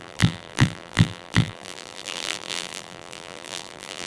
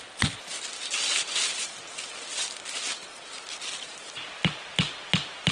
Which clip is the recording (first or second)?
second